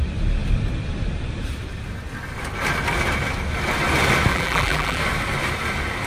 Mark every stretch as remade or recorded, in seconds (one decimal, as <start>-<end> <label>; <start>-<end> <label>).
0.0-4.3 recorded; 4.3-5.0 remade; 5.0-6.1 recorded